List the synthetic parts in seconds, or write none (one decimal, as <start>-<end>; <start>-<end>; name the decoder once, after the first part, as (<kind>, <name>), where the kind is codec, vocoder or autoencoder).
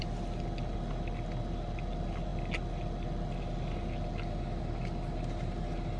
none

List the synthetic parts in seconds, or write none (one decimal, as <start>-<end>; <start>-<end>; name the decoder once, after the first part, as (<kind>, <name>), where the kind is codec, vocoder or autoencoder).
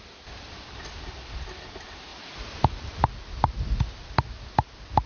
none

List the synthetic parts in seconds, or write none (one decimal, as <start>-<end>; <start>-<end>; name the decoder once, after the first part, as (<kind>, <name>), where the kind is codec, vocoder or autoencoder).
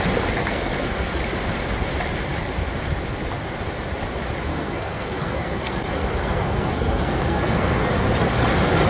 0.4-1.2 (codec, SNAC); 4.5-7.9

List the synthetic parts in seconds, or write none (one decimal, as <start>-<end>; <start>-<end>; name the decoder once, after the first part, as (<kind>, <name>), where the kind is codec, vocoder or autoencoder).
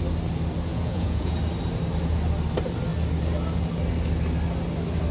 0.7-1.4 (vocoder, Vocos)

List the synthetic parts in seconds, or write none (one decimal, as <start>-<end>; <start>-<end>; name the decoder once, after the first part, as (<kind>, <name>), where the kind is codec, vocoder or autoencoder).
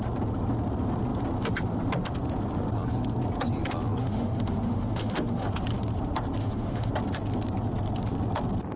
4.0-5.5 (autoencoder, DAC-VAE); 6.4-6.9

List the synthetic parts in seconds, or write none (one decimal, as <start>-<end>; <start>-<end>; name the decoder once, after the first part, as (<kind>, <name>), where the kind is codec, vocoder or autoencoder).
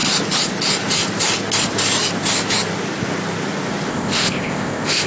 3.9-5.1 (codec, ZipCodec)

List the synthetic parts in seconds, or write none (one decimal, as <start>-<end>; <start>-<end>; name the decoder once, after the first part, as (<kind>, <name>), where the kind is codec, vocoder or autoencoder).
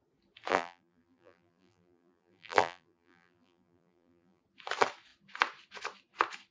0.5-4.4 (vocoder, BigVGAN v2)